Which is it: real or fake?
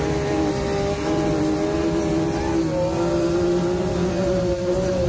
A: real